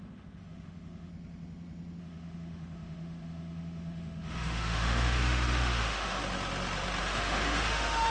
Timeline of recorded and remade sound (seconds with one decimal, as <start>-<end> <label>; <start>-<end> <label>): 0.0-1.1 remade; 1.1-2.0 recorded; 2.0-6.2 remade; 6.2-7.0 recorded; 7.0-8.1 remade